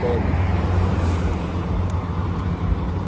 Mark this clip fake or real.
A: fake